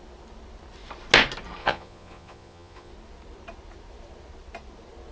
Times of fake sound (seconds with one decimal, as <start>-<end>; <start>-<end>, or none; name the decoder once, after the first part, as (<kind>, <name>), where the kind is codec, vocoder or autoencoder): 1.6-2.9 (vocoder, Vocos)